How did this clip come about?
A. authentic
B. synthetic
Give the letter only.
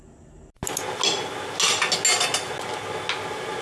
A